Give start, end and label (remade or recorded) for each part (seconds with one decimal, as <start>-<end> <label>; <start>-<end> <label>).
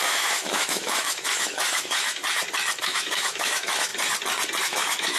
0.0-2.2 remade; 2.2-2.8 recorded; 2.8-3.9 remade; 3.9-4.6 recorded; 4.6-5.2 remade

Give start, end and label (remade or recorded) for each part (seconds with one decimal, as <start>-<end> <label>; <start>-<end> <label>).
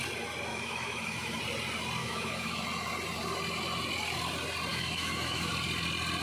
0.0-0.5 recorded; 0.5-1.4 remade; 1.4-2.0 recorded; 2.0-2.6 remade; 2.6-4.7 recorded; 4.7-5.5 remade; 5.5-6.2 recorded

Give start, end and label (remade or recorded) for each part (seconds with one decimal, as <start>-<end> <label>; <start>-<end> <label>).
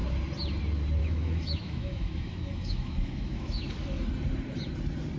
0.0-1.0 recorded; 1.0-3.7 remade; 3.7-5.2 recorded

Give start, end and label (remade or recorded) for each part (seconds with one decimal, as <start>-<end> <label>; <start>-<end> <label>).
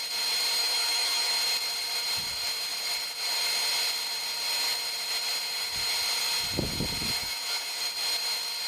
0.0-0.6 recorded; 0.6-1.3 remade; 1.3-7.2 recorded; 7.2-7.8 remade; 7.8-8.7 recorded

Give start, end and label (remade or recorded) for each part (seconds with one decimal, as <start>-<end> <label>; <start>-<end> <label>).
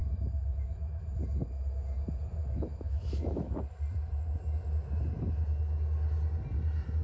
0.0-1.1 remade; 1.1-2.4 recorded; 2.4-3.5 remade; 3.5-7.0 recorded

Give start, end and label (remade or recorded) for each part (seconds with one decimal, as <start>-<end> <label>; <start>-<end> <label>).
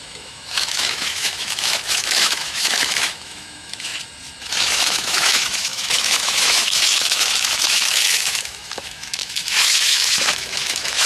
0.0-3.9 remade; 3.9-4.4 recorded; 4.4-11.1 remade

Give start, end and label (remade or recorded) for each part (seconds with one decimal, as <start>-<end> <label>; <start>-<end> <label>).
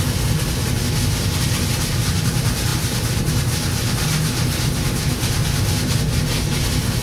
0.0-7.0 recorded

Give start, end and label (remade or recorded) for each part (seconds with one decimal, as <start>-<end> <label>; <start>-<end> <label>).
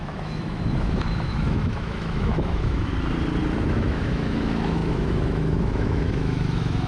0.0-2.9 remade; 2.9-3.7 recorded; 3.7-6.9 remade